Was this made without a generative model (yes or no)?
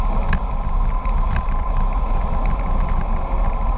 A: yes